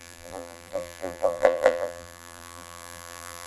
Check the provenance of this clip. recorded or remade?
remade